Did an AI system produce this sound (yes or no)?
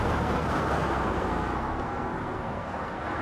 yes